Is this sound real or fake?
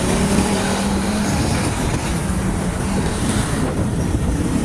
fake